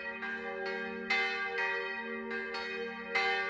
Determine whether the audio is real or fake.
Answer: real